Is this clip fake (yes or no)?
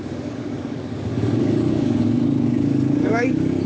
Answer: yes